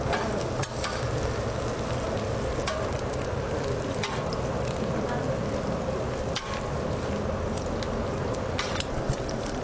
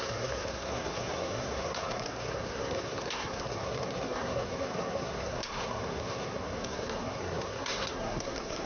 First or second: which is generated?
second